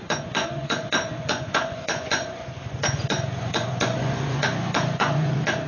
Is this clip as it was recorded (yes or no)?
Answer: no